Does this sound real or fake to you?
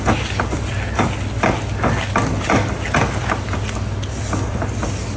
real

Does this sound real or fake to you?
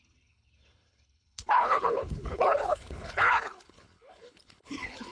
fake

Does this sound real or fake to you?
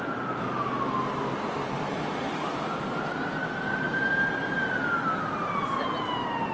real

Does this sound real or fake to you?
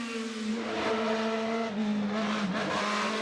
real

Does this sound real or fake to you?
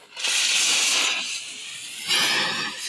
real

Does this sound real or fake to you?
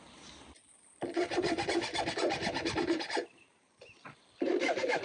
fake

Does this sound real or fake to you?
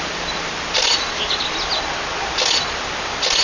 real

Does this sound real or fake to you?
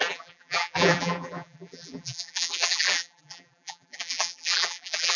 fake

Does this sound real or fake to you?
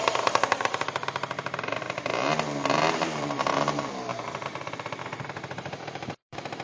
fake